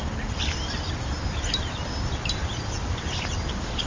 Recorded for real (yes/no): no